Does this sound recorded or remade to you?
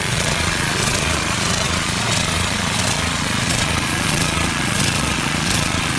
remade